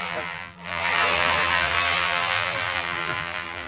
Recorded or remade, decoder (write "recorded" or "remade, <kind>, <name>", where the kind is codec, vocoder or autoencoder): remade, vocoder, BigVGAN v2